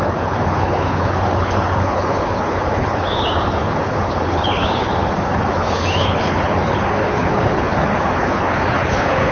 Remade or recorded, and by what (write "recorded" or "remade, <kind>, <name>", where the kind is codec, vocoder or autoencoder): remade, codec, HILCodec